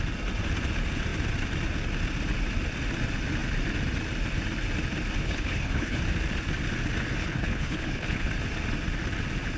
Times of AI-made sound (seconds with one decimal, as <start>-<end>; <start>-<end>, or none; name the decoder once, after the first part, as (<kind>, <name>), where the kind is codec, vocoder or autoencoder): 5.2-6.0 (codec, HILCodec); 7.2-8.3

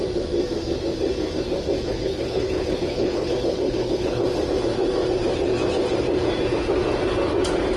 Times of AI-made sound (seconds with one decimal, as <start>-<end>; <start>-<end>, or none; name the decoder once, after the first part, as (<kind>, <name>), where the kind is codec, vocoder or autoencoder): 1.9-4.2 (codec, HILCodec)